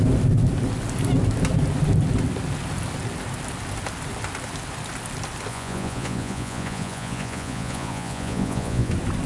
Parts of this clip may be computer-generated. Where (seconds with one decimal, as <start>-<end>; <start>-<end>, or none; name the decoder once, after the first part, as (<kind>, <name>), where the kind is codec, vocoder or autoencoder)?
5.5-8.9 (vocoder, Vocos)